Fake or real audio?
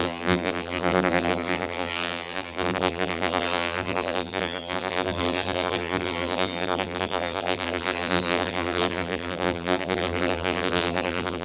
fake